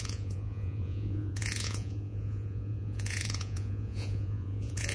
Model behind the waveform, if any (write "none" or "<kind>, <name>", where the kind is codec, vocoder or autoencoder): vocoder, Vocos